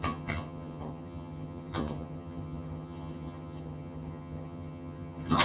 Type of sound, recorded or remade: remade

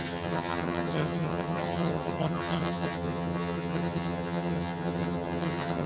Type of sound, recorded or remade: remade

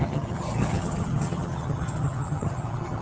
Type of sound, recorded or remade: remade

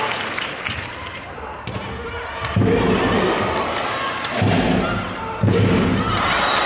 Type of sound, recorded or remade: recorded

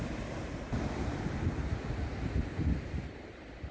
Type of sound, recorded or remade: recorded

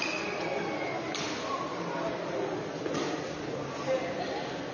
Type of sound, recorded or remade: recorded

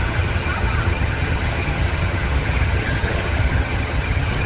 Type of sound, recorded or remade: remade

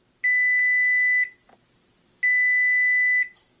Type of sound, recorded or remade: recorded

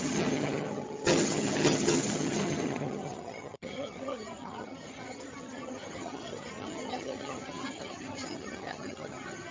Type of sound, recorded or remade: remade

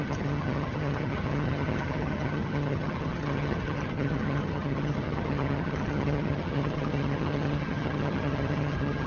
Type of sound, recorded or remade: remade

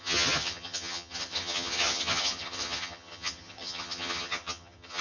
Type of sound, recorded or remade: remade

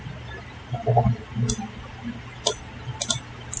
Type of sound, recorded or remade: recorded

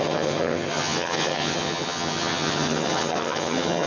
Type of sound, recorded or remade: remade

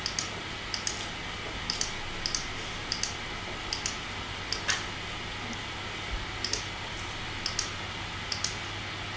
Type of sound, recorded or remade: recorded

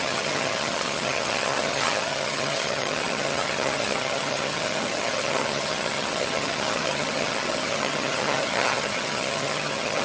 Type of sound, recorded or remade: remade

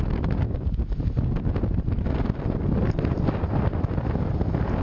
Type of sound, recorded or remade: recorded